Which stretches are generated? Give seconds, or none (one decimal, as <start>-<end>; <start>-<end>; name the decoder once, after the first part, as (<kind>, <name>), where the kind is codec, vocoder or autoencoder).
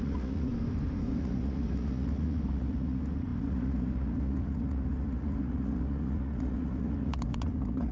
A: 0.0-0.5 (vocoder, Vocos); 1.2-7.9